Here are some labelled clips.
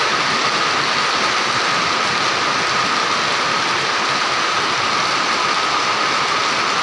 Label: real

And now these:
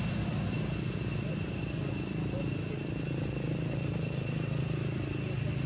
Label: real